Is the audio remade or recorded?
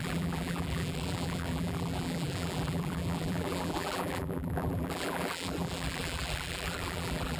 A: remade